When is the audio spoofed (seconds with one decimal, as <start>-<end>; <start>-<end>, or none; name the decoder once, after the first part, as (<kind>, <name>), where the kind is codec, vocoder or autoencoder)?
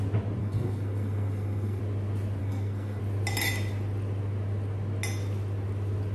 0.4-1.8 (codec, SNAC); 2.4-3.0